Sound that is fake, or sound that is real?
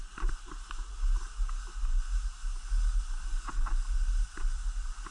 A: real